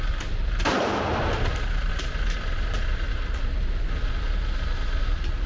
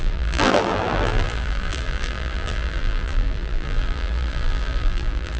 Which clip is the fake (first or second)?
second